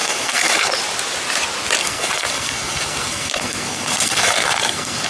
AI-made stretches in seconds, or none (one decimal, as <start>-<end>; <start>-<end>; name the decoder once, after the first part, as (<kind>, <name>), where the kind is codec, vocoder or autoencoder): 0.0-0.7 (codec, SNAC); 1.8-5.1